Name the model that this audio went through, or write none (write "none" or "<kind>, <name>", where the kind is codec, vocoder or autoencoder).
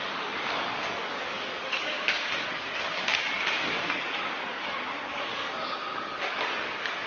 codec, DAC